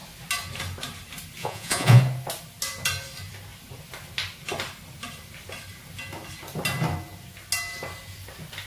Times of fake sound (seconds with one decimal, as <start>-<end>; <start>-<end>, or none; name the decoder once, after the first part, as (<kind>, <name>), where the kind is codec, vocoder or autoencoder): 1.4-2.0 (vocoder, Vocos)